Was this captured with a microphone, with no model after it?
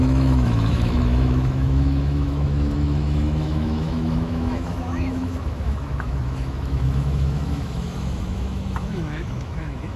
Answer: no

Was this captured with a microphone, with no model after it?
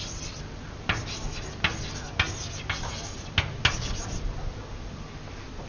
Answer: yes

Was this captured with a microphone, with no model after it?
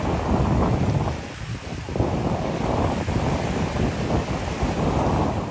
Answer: yes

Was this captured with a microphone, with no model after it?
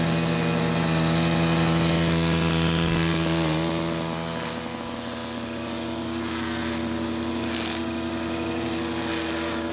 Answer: yes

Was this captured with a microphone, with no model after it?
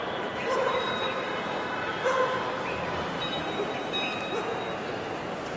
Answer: no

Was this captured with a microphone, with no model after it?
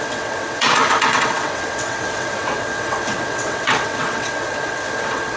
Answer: no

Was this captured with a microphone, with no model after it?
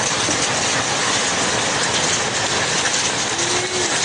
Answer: yes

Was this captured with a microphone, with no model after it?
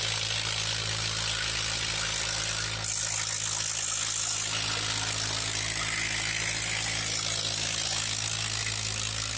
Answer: yes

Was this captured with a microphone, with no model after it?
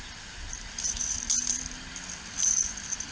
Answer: no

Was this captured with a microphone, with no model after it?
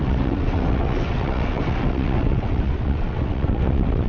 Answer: no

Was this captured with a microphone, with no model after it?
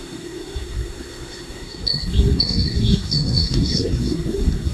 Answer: no